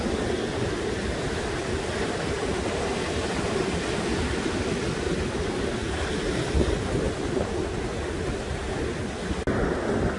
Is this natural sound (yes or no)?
yes